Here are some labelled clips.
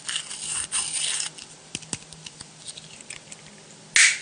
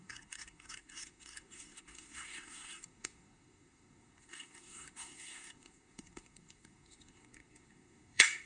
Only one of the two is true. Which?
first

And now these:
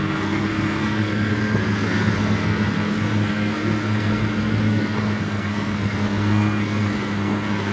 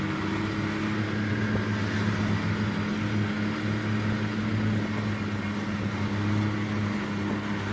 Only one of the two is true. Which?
second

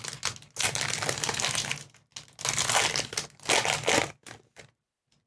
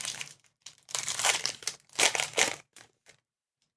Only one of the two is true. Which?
first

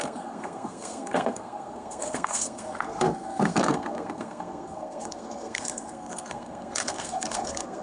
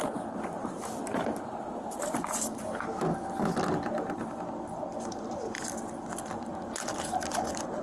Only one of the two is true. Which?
second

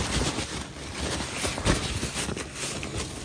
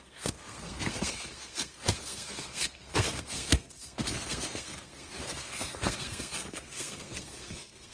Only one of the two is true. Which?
first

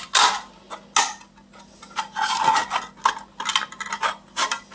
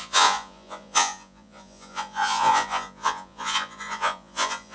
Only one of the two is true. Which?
first